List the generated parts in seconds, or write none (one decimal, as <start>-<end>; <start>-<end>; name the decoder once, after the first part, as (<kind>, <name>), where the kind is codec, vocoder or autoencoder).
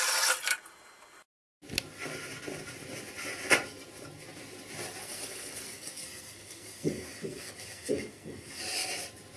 5.0-8.6 (codec, SNAC)